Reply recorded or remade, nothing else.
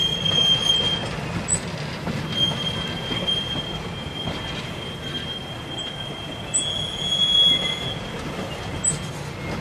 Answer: recorded